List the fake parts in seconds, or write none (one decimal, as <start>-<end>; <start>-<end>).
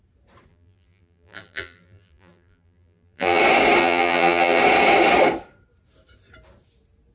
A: 0.5-3.4; 3.8-4.6